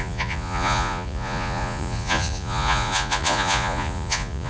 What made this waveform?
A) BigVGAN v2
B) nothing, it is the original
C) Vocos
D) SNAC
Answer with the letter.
C